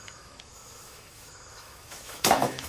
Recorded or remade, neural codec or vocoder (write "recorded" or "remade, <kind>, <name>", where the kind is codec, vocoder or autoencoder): remade, autoencoder, DAC-VAE